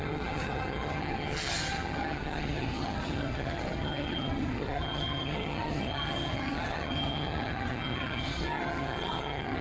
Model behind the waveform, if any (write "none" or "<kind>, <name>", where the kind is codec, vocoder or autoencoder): vocoder, HiFi-GAN